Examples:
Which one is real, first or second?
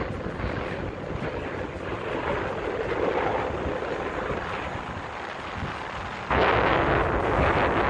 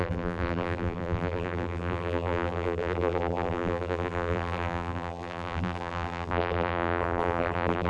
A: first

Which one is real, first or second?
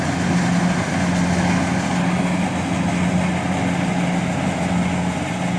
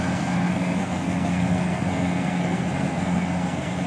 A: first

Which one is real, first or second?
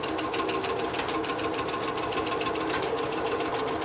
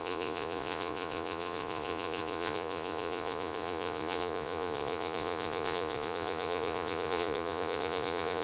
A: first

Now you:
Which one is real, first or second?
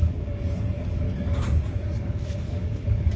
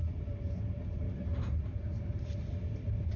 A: second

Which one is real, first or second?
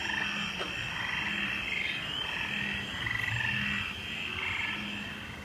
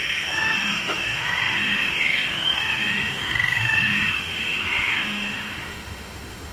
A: first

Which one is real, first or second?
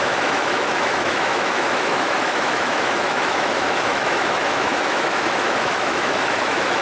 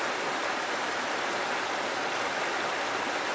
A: second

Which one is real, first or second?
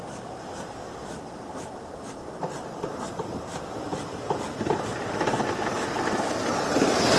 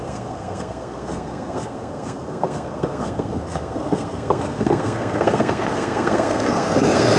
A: first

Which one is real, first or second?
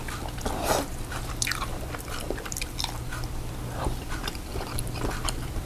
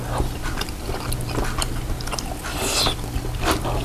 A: second